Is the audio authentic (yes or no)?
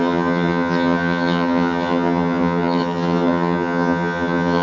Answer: no